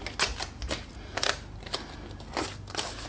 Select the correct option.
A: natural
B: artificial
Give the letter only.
A